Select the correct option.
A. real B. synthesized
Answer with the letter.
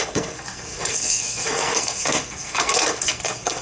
B